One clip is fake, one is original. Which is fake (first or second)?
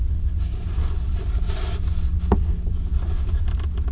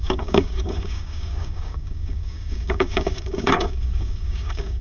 second